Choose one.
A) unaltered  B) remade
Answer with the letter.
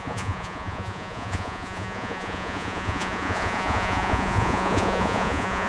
B